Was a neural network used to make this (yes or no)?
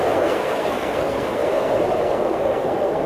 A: yes